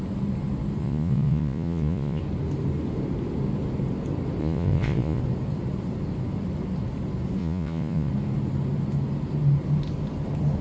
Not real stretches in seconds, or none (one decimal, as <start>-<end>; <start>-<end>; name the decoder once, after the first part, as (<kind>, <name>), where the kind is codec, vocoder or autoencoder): 0.8-2.2 (vocoder, Vocos); 4.4-5.2; 7.4-8.1